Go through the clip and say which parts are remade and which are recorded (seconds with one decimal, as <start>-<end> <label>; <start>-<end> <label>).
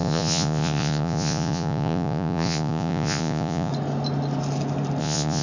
0.0-3.7 remade; 3.7-5.0 recorded; 5.0-5.4 remade